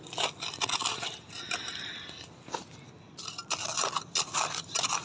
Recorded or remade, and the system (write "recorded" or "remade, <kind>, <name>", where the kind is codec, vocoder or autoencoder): recorded